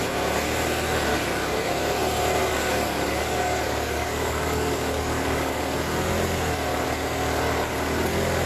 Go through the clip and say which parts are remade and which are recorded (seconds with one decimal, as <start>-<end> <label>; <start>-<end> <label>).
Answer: 0.0-1.1 recorded; 1.1-1.7 remade; 1.7-2.4 recorded; 2.4-5.6 remade; 5.6-8.5 recorded